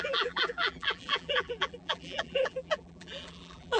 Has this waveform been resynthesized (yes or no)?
yes